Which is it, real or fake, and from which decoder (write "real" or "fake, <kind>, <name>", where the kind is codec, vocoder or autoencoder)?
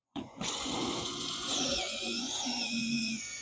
fake, vocoder, Vocos